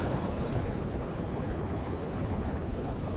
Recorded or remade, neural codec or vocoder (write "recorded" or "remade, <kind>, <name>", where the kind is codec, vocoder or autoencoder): remade, codec, HILCodec